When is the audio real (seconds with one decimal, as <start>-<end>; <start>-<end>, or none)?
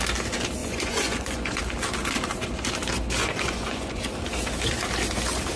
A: 0.0-0.6; 1.6-3.2; 4.0-5.6